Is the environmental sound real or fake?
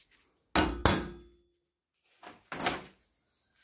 real